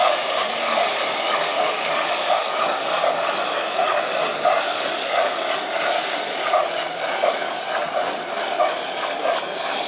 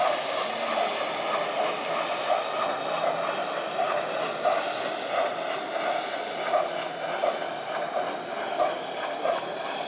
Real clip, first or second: second